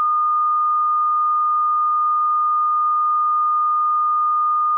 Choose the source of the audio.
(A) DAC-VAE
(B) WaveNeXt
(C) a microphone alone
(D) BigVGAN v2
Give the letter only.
A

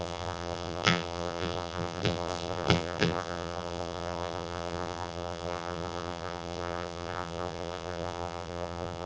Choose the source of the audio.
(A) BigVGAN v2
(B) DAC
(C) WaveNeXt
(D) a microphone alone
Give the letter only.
A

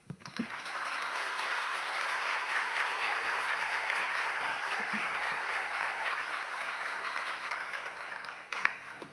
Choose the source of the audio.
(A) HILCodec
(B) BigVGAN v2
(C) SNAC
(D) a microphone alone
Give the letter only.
C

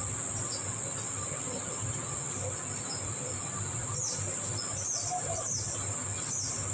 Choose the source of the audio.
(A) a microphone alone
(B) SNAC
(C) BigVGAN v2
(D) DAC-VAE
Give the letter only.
A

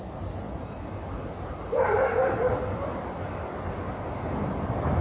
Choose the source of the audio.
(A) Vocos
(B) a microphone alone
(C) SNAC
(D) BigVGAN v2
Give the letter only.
B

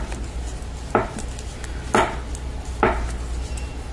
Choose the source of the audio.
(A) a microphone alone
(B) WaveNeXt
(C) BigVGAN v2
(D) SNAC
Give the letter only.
A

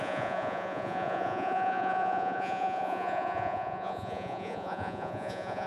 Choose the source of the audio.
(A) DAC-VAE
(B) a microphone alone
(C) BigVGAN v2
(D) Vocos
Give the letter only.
D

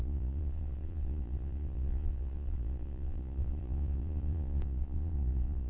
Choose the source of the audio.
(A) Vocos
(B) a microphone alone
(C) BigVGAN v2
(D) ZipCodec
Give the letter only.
A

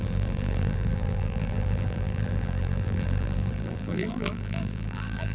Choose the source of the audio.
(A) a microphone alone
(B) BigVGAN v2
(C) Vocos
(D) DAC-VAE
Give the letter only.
B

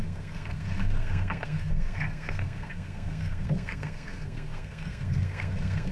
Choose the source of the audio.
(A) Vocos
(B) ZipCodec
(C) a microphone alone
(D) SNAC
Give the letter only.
D